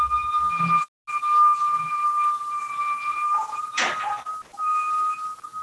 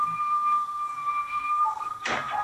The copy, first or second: second